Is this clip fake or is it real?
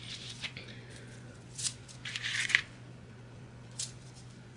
fake